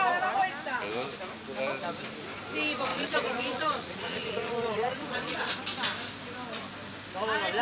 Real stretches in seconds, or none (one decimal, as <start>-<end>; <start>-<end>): 0.0-2.9; 5.5-7.6